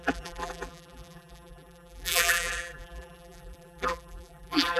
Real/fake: fake